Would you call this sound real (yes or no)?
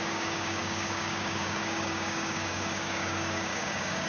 no